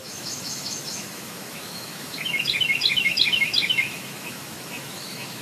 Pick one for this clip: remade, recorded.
remade